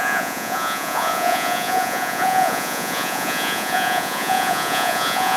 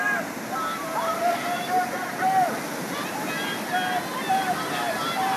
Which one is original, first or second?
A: second